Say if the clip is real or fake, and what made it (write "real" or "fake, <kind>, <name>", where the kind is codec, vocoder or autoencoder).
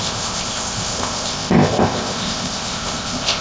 fake, codec, ZipCodec